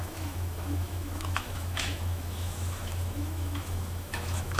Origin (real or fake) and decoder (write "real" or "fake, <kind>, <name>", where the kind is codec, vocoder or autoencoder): fake, autoencoder, DAC-VAE